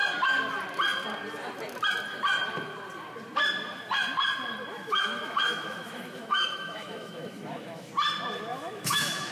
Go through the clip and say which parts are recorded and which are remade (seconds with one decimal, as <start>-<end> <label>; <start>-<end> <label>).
0.0-4.7 recorded; 4.7-7.9 remade; 7.9-8.5 recorded; 8.5-9.3 remade